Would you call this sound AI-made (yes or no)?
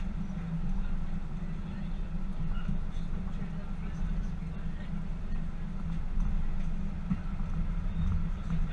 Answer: no